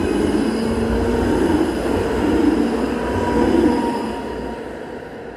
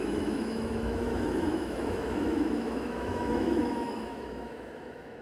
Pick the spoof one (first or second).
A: second